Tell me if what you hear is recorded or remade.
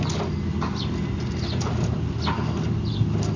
recorded